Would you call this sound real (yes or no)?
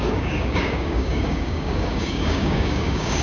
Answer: no